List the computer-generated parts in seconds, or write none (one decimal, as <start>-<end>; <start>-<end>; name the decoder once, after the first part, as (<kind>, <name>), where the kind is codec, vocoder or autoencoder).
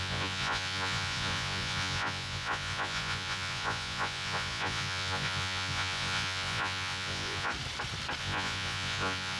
0.0-7.5 (vocoder, Vocos); 8.2-9.4